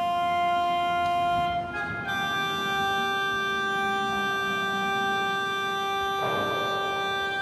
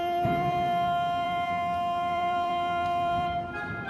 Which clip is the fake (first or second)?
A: second